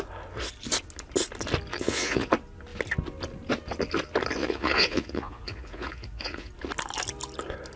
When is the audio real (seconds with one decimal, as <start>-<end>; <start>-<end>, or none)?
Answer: 0.0-1.7; 2.3-4.4; 6.5-7.8